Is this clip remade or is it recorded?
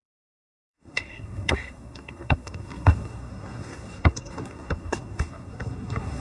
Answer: remade